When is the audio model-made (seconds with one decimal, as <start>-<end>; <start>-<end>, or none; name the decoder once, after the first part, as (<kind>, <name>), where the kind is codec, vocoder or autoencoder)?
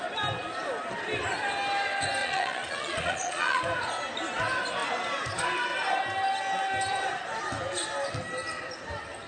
2.2-3.6 (vocoder, Vocos)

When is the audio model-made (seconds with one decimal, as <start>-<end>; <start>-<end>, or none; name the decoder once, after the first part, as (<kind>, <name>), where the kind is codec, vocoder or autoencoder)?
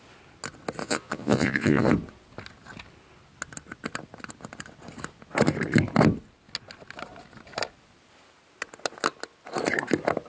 0.8-1.9 (vocoder, Vocos)